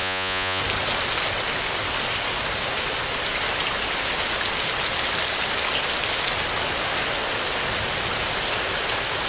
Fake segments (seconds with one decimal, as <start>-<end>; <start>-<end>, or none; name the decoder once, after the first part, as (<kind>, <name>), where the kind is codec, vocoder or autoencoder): 0.0-0.6 (vocoder, Vocos)